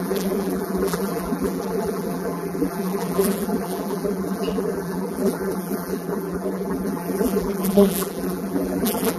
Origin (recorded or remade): remade